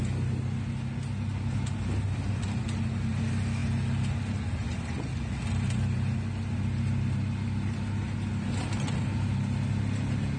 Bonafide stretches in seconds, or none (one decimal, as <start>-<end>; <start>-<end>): 0.0-10.4